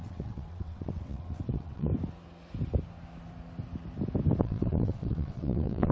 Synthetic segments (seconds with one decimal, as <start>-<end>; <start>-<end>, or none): 0.0-1.9; 4.4-5.9